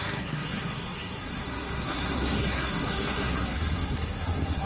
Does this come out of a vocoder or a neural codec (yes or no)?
yes